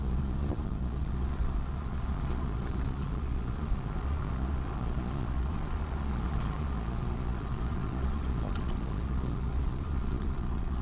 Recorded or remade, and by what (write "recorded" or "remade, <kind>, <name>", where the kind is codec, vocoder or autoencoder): remade, vocoder, Vocos